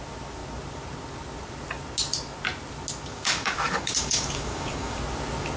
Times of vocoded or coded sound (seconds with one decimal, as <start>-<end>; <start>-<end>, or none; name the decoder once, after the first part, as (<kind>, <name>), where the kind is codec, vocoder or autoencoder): 3.1-5.0 (codec, DAC)